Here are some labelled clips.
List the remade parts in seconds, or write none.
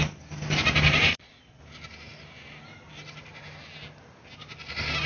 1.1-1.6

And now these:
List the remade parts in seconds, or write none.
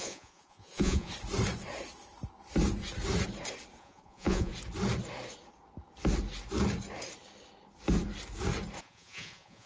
0.0-1.1; 3.8-4.5; 8.8-9.7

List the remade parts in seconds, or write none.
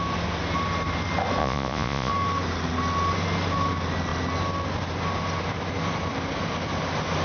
1.4-2.1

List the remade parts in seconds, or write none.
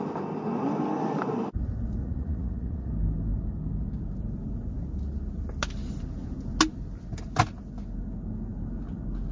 2.0-2.9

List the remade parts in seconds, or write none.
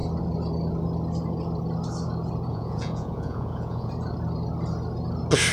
2.5-3.9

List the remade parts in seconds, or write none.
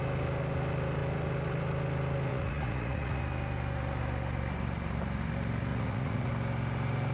2.3-3.2; 5.7-6.3